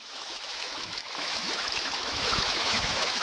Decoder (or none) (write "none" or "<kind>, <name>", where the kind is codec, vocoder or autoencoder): autoencoder, DAC-VAE